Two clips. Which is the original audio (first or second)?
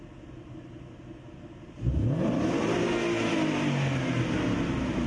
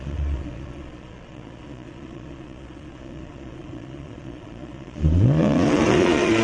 first